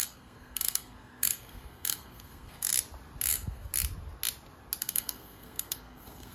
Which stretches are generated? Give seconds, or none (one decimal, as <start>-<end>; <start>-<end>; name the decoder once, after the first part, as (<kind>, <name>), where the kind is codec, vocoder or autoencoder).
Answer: 0.0-2.7 (codec, SNAC); 3.3-3.7; 4.8-6.3